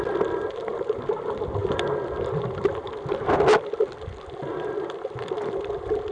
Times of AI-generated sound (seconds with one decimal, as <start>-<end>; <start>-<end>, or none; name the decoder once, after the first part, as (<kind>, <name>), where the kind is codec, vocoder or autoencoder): none